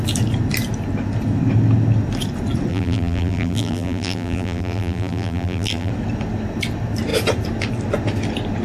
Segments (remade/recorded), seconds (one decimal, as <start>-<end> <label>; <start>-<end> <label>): 0.0-2.7 recorded; 2.7-5.9 remade; 5.9-8.6 recorded